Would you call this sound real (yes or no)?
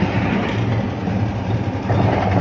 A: yes